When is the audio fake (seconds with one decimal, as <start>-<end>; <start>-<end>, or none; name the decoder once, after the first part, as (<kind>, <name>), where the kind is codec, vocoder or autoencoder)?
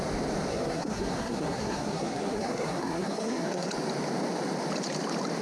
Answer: 0.5-3.7 (codec, SNAC)